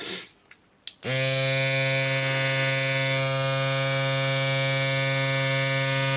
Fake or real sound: real